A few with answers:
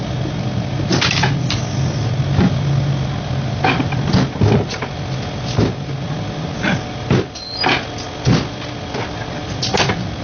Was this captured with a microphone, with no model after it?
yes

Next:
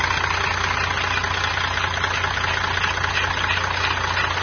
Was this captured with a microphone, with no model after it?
yes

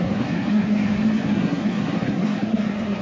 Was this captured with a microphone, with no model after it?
no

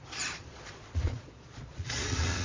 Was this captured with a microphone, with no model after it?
no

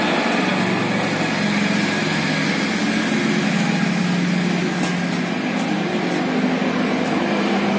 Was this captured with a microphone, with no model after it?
yes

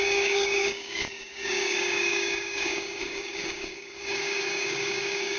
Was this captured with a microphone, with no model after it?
no